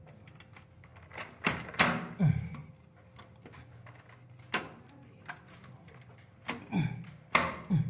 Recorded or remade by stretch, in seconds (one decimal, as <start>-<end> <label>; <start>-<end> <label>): 0.0-7.9 recorded